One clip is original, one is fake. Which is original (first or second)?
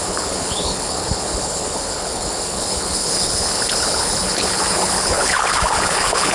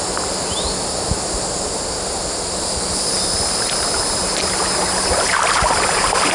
second